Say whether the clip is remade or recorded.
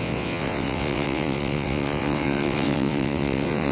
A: remade